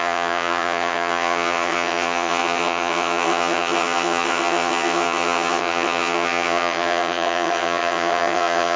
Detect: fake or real fake